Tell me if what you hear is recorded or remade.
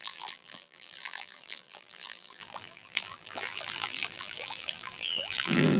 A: remade